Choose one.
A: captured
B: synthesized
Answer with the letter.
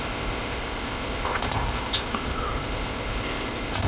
B